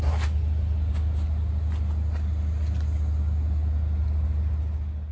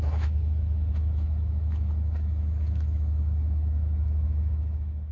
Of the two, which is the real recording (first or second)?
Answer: first